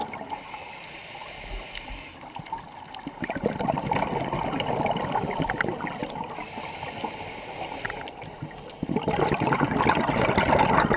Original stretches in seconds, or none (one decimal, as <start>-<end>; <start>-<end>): 0.0-11.0